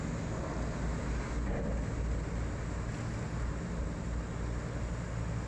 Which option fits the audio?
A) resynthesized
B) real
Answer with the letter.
B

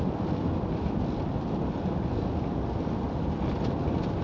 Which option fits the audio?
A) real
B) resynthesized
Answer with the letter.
A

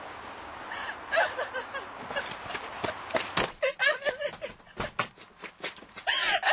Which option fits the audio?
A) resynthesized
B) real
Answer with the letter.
B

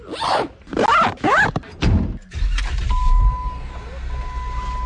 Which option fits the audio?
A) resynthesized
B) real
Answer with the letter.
B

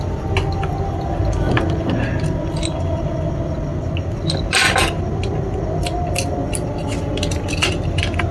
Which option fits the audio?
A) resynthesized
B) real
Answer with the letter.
B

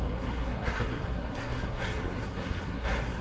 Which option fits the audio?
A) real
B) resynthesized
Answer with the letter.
B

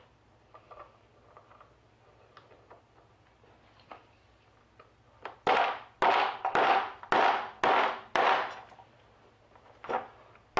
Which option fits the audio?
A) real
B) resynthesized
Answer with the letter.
A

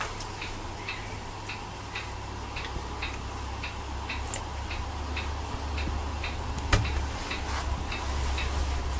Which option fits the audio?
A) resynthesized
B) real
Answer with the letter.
B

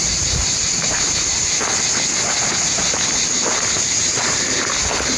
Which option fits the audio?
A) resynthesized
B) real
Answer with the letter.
B